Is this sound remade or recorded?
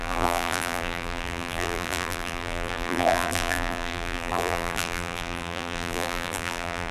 remade